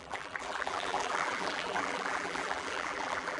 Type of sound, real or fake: fake